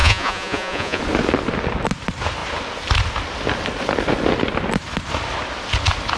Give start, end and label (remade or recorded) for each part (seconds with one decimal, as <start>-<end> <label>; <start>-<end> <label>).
0.0-1.0 remade; 1.0-6.2 recorded